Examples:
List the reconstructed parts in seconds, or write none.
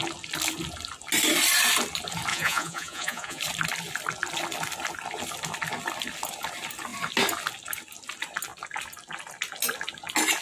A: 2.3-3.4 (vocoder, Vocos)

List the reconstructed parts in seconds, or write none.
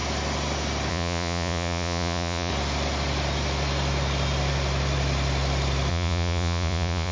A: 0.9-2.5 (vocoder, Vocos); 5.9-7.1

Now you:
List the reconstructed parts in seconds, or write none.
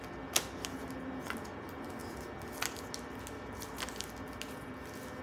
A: none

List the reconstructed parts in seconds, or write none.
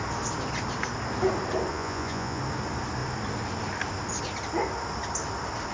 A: 1.7-2.4 (vocoder, Vocos)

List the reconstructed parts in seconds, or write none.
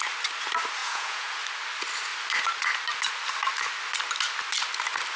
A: 0.8-1.3 (vocoder, Vocos)